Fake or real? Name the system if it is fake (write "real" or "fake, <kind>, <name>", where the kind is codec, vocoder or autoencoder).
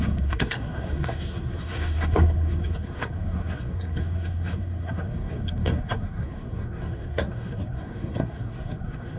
fake, codec, SNAC